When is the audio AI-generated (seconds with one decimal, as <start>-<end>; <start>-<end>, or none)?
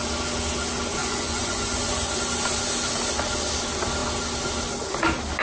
1.0-2.2